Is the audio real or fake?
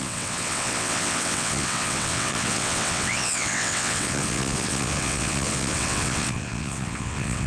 fake